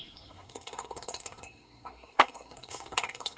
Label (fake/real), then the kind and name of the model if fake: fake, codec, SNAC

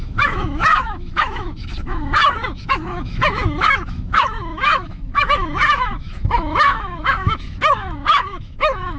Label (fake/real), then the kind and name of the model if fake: fake, autoencoder, DAC-VAE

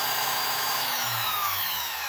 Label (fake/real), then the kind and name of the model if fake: fake, autoencoder, DAC-VAE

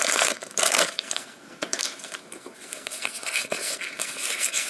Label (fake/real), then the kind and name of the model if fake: fake, codec, SNAC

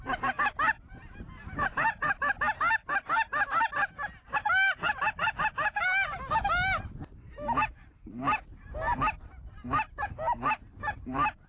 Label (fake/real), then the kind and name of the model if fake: real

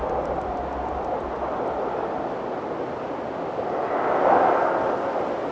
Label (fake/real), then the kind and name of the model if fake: real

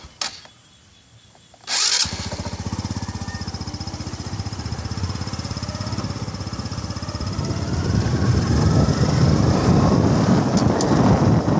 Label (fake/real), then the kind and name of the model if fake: real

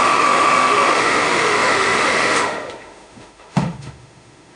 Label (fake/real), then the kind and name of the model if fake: fake, autoencoder, DAC-VAE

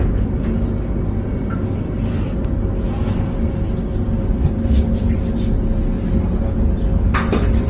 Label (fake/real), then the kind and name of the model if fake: real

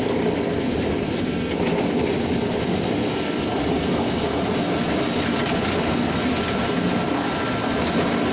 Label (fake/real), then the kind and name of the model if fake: real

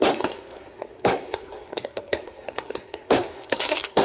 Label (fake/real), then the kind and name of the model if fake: fake, codec, SNAC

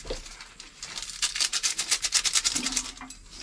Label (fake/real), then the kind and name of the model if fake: real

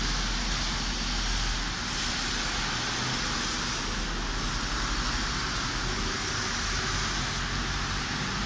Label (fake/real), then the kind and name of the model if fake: real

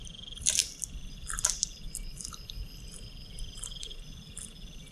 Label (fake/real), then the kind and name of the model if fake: real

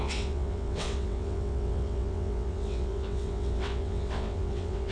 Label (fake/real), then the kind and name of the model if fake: fake, vocoder, WaveNeXt